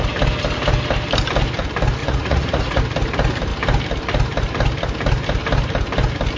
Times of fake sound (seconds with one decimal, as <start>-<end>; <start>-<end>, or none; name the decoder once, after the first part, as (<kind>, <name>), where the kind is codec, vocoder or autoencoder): 2.0-2.8 (vocoder, Vocos)